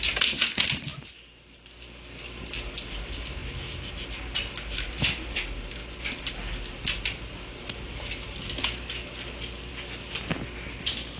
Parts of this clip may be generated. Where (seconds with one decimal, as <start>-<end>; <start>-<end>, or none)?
0.9-2.2

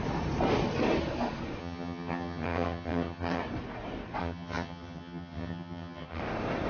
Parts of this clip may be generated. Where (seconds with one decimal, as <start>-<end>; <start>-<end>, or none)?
1.6-3.4; 4.2-6.2

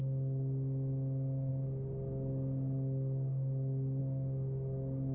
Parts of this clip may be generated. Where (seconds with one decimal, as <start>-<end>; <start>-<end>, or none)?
none

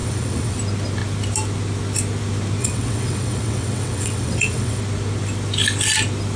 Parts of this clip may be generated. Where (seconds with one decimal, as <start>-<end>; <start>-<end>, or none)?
0.0-0.6; 2.6-4.8

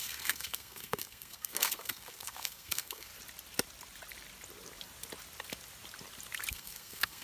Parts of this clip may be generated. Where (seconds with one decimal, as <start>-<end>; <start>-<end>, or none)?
0.0-3.1; 6.5-7.2